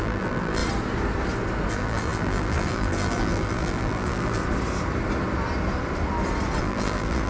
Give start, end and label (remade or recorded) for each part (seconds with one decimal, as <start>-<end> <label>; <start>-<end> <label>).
0.0-0.6 remade; 0.6-1.7 recorded; 1.7-4.4 remade; 4.4-6.6 recorded; 6.6-7.3 remade